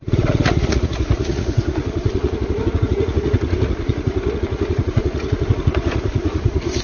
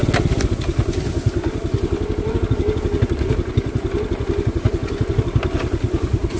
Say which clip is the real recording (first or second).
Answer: second